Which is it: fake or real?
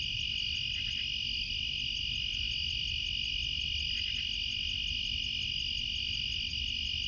real